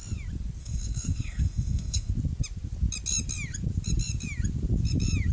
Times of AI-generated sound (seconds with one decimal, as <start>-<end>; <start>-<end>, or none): 0.6-2.1